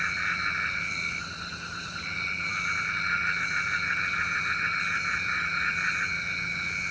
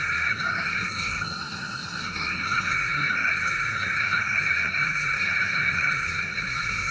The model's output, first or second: second